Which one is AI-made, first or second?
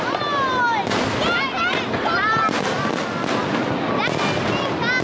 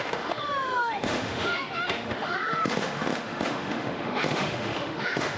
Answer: second